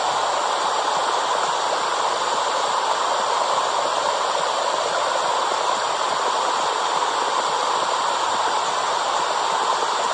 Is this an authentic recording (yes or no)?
yes